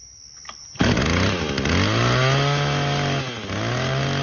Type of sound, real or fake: real